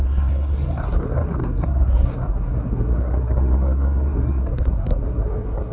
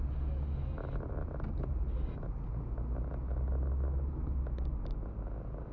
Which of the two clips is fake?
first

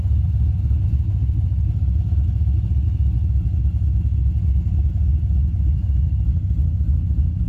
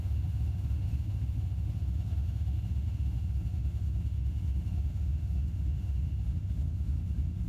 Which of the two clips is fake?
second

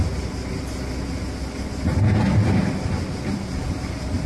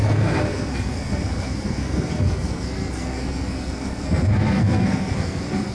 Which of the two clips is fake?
second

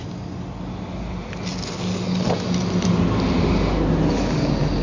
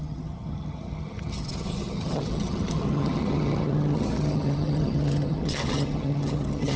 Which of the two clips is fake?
second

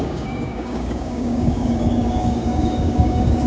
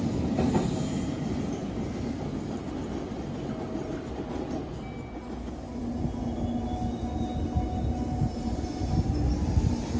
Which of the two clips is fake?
first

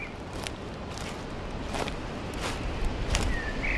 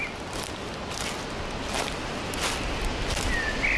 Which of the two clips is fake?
first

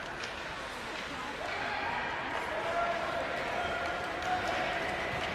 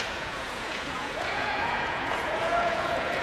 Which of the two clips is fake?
second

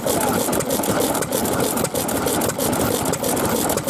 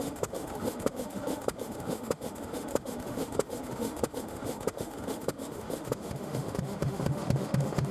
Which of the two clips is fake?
second